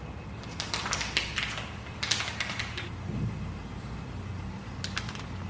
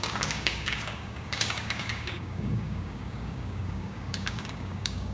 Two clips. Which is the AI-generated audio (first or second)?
second